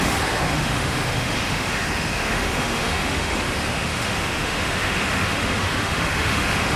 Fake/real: fake